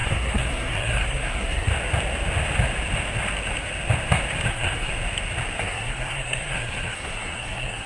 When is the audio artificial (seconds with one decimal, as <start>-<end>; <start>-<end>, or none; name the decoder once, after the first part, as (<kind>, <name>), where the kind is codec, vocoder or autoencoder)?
0.0-1.7 (codec, SNAC); 4.5-4.9; 5.6-7.9